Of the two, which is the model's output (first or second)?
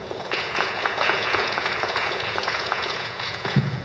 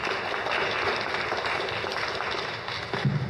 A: first